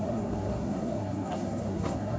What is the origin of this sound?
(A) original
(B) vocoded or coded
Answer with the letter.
B